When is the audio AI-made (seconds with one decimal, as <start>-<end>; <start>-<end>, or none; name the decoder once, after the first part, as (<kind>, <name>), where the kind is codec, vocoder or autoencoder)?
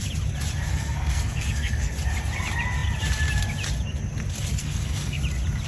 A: 0.7-1.9 (codec, SNAC); 4.6-5.2